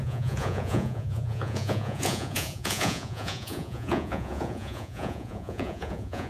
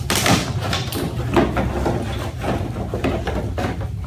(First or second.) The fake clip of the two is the first